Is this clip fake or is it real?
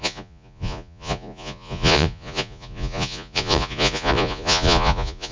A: fake